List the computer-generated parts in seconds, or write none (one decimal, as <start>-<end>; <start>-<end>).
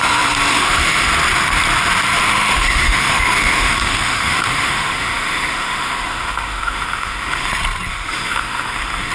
0.5-1.1; 2.5-7.5; 7.9-9.1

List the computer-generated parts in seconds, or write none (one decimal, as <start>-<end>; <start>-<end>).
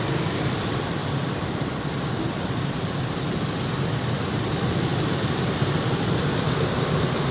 0.0-1.0; 4.3-7.3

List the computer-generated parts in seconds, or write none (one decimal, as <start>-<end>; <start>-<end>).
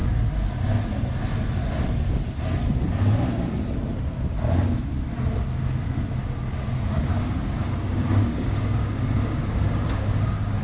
6.2-10.6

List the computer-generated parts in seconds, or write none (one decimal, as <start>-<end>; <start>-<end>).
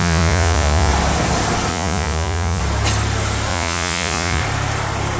0.0-0.9; 1.7-2.6; 3.5-4.4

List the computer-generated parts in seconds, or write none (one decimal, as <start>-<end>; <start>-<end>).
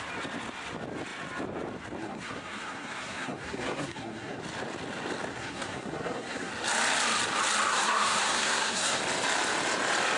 2.0-4.4; 5.3-6.5; 7.7-9.0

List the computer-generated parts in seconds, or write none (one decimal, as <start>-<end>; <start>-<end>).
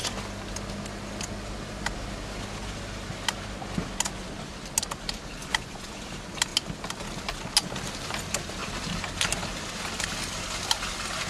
5.4-6.0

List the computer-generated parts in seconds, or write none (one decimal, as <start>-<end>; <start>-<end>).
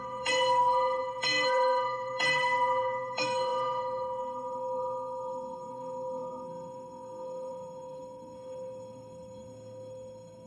0.0-10.5